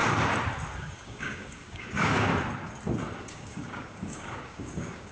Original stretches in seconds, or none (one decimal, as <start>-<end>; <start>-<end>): 0.0-0.8; 2.3-3.2